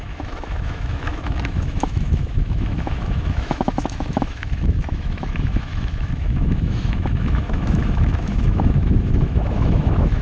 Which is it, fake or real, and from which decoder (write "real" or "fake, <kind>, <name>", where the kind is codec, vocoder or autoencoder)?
fake, autoencoder, DAC-VAE